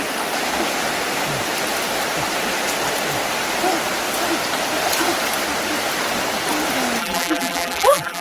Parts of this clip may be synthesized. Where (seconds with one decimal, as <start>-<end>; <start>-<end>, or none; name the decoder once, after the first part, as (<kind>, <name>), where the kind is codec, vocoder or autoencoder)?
7.0-8.2 (vocoder, BigVGAN v2)

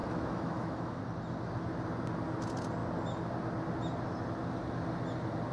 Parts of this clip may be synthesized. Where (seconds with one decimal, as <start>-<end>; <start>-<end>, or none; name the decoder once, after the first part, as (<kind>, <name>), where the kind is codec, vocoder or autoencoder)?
0.0-1.0 (autoencoder, DAC-VAE)

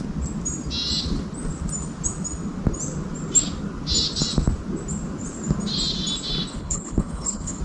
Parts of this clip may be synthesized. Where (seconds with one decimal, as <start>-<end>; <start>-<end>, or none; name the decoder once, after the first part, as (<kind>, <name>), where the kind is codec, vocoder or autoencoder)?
6.5-7.6 (codec, HILCodec)

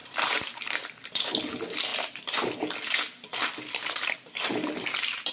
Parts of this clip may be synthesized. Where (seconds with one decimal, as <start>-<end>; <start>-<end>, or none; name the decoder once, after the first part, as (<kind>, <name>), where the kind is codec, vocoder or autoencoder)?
0.0-1.4 (vocoder, BigVGAN v2)

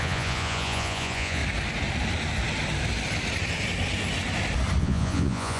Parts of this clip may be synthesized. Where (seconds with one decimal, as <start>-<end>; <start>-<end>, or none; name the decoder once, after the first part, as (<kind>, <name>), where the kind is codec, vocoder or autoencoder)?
0.0-1.4 (vocoder, Vocos); 4.8-5.6